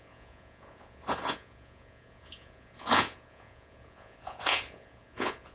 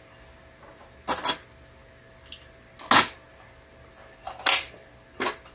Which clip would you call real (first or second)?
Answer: second